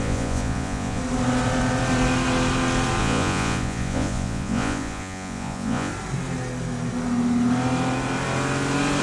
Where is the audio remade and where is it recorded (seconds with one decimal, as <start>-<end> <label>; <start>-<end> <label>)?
0.0-1.0 remade; 1.0-3.0 recorded; 3.0-5.9 remade; 5.9-9.0 recorded